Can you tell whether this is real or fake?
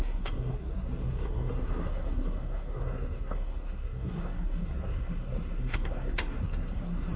fake